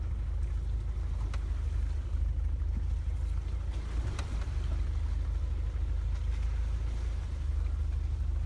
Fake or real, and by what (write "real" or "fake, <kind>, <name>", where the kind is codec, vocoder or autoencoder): real